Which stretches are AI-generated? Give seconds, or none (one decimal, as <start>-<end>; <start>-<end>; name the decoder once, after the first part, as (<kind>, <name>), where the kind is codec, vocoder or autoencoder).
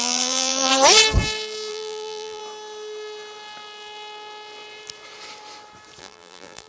0.0-0.7 (vocoder, BigVGAN v2); 1.7-2.4; 6.0-6.7